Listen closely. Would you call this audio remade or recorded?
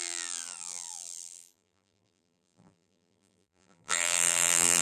remade